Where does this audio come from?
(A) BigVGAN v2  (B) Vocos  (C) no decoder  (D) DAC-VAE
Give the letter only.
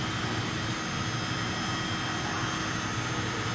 C